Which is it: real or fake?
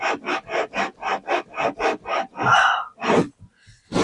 real